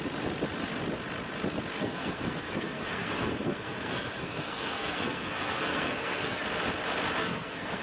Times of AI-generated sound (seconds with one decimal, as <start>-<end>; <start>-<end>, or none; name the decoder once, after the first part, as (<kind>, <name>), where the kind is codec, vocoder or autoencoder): 1.8-6.4 (codec, SNAC); 7.2-7.8